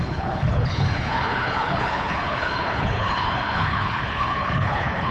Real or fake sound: fake